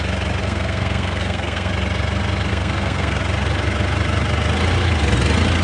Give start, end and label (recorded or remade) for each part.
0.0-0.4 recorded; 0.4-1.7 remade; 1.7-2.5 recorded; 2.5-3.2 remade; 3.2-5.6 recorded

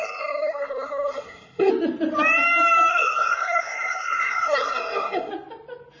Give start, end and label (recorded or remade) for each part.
0.0-1.7 remade; 1.7-2.9 recorded; 2.9-5.3 remade; 5.3-6.0 recorded

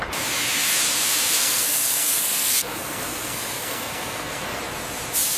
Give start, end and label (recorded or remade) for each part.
0.0-1.4 recorded; 1.4-4.6 remade; 4.6-5.4 recorded

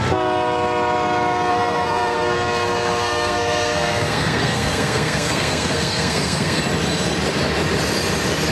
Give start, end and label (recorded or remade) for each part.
0.0-1.5 recorded; 1.5-6.6 remade; 6.6-8.5 recorded

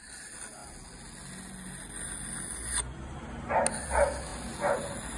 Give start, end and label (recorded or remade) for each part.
0.0-5.2 recorded

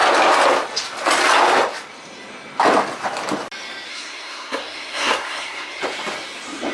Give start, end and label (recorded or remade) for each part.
0.0-3.9 recorded; 3.9-5.8 remade; 5.8-6.7 recorded

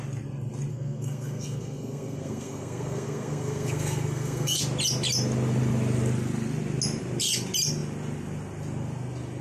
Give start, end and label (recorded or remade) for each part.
0.0-0.7 recorded; 0.7-4.6 remade; 4.6-9.4 recorded

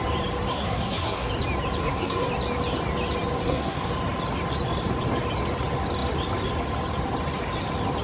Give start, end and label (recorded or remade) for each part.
0.0-0.5 recorded; 0.5-1.3 remade; 1.3-1.8 recorded; 1.8-2.3 remade; 2.3-3.4 recorded; 3.4-3.9 remade; 3.9-8.0 recorded